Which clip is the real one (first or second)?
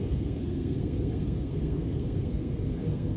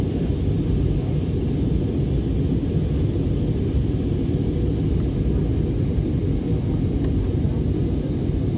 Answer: second